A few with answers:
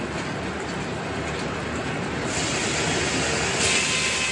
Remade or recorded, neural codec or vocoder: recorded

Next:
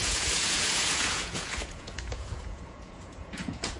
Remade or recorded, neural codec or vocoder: remade, vocoder, Vocos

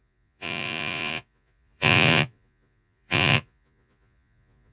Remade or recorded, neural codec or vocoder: remade, vocoder, Vocos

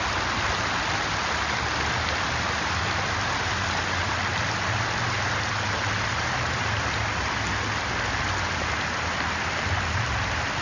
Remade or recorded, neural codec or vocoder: recorded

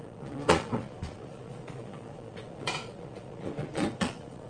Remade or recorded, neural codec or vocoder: remade, vocoder, Vocos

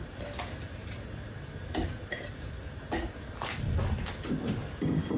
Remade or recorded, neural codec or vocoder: recorded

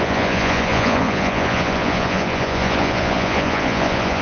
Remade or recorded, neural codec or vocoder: remade, vocoder, Vocos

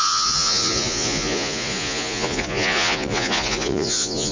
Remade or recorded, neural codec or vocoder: remade, vocoder, Vocos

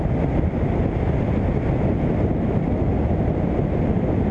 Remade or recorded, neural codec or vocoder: recorded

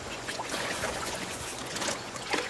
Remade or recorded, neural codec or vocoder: remade, vocoder, Vocos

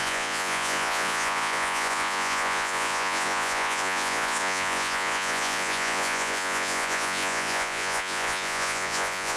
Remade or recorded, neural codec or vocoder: remade, vocoder, Vocos